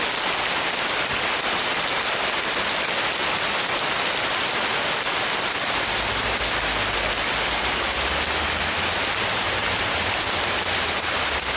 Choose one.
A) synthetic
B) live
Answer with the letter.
B